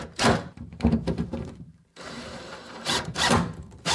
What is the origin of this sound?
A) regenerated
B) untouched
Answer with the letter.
A